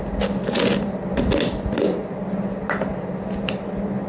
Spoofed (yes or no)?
no